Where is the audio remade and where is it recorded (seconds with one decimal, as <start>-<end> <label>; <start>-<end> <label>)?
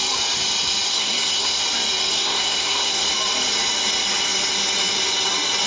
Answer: 0.0-0.9 recorded; 0.9-1.6 remade; 1.6-2.1 recorded; 2.1-3.1 remade; 3.1-5.7 recorded